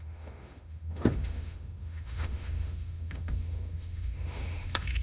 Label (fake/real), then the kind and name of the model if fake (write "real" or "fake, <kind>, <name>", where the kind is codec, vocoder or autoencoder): fake, autoencoder, DAC-VAE